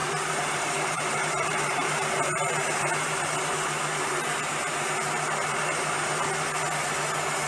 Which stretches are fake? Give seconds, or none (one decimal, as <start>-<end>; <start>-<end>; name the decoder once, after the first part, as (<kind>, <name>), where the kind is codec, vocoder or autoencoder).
0.0-2.2 (vocoder, BigVGAN v2)